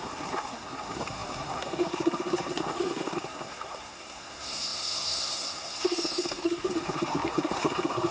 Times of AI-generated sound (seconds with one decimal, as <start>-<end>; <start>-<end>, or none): 0.0-8.1